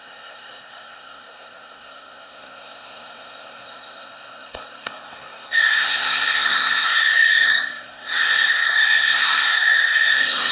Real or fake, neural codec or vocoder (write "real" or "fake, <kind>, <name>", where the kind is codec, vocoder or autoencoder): fake, codec, SNAC